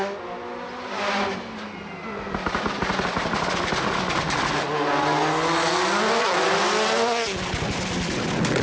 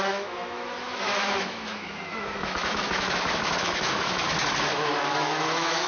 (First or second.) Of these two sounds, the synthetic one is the second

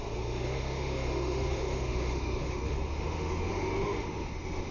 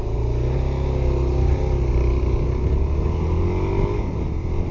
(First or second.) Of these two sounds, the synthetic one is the first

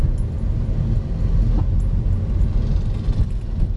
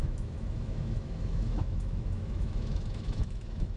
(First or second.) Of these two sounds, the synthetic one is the second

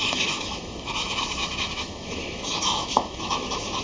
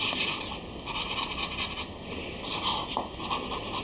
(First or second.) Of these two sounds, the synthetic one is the first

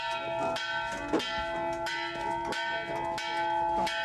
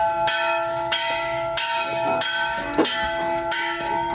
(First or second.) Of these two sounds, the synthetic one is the second